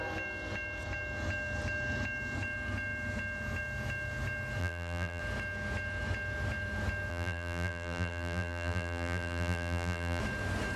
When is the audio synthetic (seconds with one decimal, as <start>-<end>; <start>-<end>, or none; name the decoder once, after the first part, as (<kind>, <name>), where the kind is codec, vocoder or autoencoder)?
4.6-5.2 (vocoder, BigVGAN v2); 7.1-10.2